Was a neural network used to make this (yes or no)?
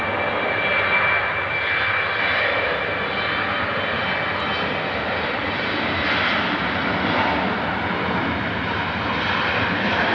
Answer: no